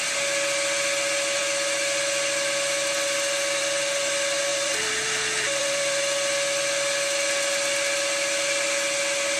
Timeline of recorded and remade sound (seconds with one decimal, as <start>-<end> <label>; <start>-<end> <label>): 0.0-4.5 recorded; 4.5-6.0 remade; 6.0-9.4 recorded